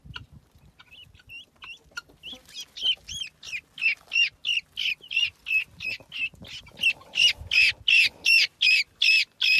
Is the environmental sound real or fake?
real